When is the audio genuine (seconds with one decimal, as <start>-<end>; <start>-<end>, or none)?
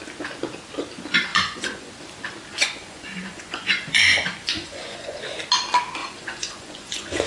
0.0-1.3; 1.9-2.5; 5.2-6.0